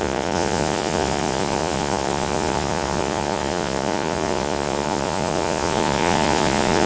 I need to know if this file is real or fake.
fake